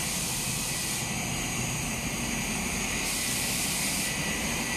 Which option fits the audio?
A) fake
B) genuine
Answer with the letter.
B